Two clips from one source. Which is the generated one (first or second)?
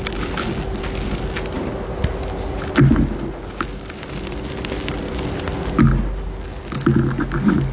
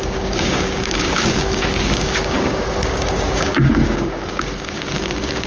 second